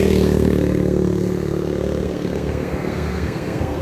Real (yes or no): no